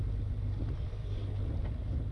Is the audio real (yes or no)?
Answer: yes